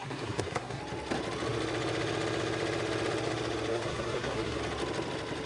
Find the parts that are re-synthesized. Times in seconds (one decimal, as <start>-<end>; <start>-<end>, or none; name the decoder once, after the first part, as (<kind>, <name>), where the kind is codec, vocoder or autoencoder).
0.0-0.8 (codec, SNAC); 3.7-4.6